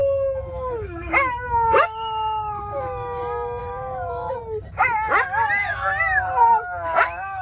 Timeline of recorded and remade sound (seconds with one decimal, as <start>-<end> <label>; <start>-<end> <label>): 0.0-3.2 remade; 3.2-3.6 recorded; 3.6-4.4 remade; 4.4-7.4 recorded